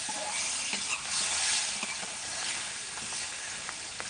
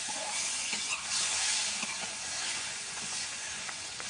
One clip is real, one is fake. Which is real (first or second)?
first